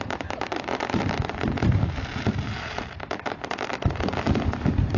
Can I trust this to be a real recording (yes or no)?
no